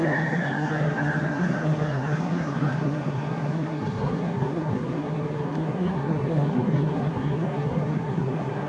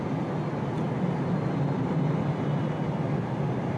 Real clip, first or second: second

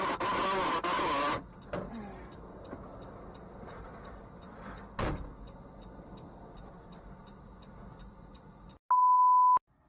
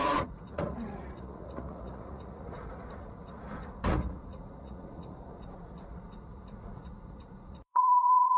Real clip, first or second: first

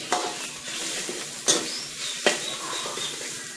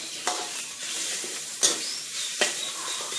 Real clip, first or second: first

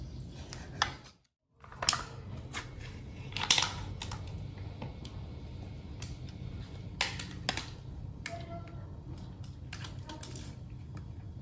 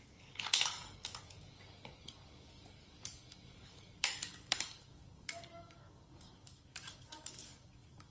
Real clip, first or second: first